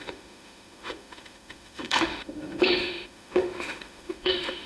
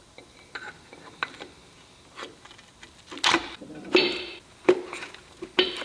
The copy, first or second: first